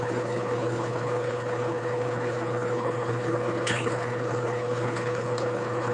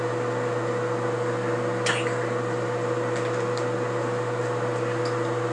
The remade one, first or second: first